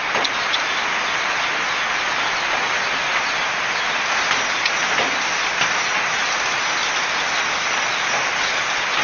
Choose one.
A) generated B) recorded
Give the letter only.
B